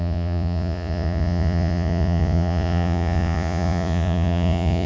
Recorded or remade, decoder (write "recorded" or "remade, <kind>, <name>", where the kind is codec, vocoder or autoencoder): remade, vocoder, Vocos